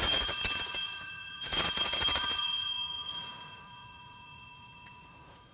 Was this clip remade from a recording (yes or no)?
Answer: yes